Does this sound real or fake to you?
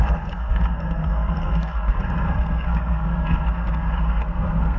fake